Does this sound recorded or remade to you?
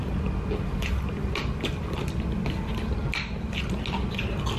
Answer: recorded